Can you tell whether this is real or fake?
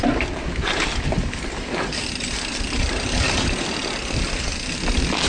fake